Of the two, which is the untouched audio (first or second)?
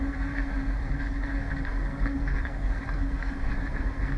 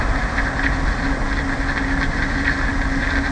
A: second